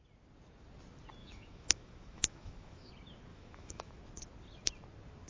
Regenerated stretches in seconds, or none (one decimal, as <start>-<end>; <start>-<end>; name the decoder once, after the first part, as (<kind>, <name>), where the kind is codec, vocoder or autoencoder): 1.2-2.9 (autoencoder, DAC-VAE); 3.3-4.0